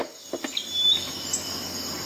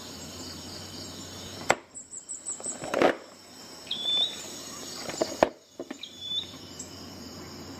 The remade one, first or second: second